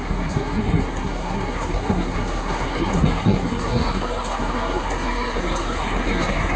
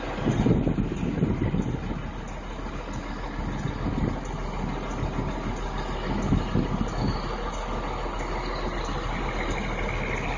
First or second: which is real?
second